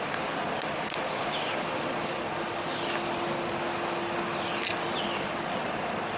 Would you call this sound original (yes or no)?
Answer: yes